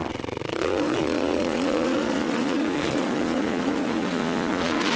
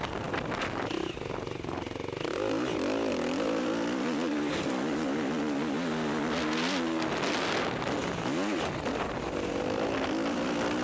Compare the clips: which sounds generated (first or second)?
first